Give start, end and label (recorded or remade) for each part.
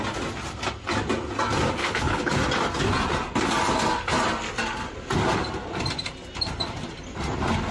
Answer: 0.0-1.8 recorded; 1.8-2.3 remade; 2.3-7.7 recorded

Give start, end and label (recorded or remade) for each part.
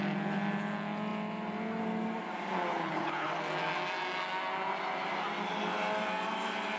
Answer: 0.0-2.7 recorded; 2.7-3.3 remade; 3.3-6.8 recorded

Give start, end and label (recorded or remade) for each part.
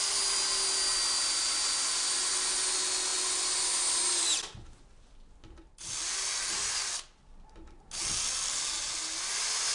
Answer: 0.0-9.7 recorded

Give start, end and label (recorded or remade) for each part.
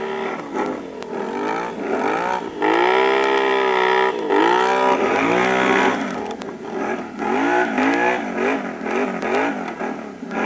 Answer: 0.0-10.5 recorded